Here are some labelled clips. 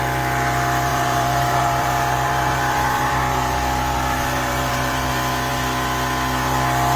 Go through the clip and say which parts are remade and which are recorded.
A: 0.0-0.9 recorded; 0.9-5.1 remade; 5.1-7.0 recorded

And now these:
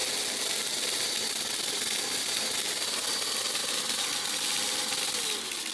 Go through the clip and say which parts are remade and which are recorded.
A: 0.0-3.6 recorded; 3.6-4.2 remade; 4.2-5.7 recorded